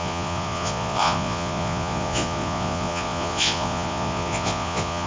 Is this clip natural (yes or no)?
no